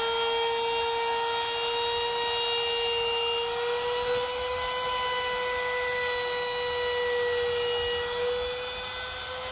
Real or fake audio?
real